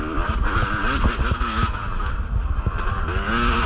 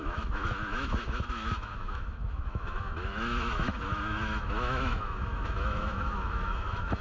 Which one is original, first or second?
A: first